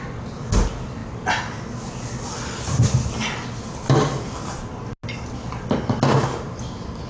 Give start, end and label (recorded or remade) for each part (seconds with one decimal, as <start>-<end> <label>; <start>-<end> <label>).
0.0-7.1 recorded